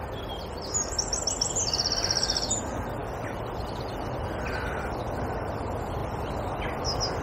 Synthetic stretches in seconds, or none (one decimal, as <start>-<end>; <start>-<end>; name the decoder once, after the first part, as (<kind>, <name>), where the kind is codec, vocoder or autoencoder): 0.0-3.0 (vocoder, BigVGAN v2); 4.1-6.0